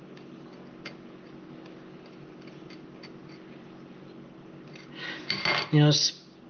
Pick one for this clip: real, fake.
real